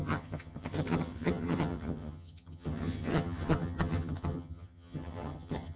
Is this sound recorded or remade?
remade